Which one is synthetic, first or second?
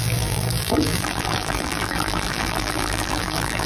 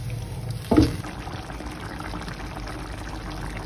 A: first